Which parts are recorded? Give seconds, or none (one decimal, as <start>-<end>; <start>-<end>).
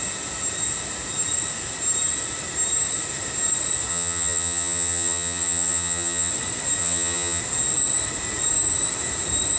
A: 0.0-3.9; 6.3-6.8; 7.4-9.6